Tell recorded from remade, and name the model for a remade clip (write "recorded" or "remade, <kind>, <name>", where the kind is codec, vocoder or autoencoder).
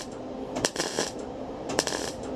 remade, vocoder, BigVGAN v2